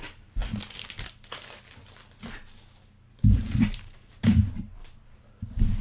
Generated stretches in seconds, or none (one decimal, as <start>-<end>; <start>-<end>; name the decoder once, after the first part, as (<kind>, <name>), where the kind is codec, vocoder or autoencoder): 0.0-0.4 (vocoder, BigVGAN v2); 3.2-5.8

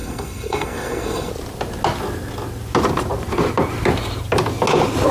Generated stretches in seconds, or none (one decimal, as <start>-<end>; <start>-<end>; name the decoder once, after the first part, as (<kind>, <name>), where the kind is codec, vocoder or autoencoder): 0.0-1.3 (codec, SNAC)

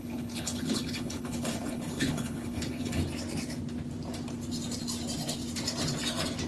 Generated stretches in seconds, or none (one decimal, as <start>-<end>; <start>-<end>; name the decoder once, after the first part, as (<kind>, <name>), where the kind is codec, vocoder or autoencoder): 0.0-3.0 (codec, HILCodec)

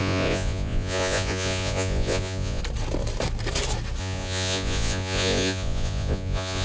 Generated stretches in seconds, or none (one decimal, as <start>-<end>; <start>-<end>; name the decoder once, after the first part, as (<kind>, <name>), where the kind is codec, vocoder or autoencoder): 0.0-2.6 (vocoder, Vocos); 4.0-6.6

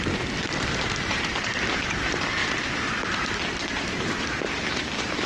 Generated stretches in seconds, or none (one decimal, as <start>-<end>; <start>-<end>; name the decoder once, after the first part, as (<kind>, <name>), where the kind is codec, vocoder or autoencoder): 0.0-2.4 (vocoder, BigVGAN v2); 3.1-5.3

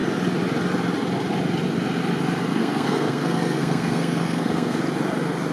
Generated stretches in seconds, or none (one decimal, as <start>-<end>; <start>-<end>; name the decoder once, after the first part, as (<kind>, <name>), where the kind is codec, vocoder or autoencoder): 2.5-4.8 (codec, SNAC)

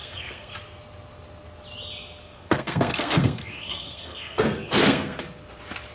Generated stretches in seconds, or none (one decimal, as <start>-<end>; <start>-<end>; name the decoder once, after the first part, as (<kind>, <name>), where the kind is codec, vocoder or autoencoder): 0.0-0.5 (codec, SNAC); 2.2-5.2

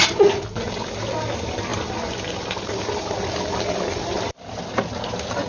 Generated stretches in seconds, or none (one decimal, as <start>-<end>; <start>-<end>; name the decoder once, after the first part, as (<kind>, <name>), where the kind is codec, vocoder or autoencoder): none